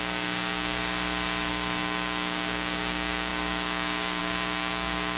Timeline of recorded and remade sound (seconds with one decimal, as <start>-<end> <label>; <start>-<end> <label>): 0.0-0.8 remade; 0.8-1.5 recorded; 1.5-5.2 remade